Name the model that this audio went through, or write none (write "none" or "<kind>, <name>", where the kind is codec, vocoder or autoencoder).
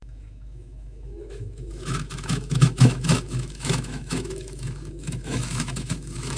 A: autoencoder, DAC-VAE